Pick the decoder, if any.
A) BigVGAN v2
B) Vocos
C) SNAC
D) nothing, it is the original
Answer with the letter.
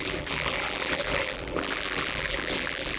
A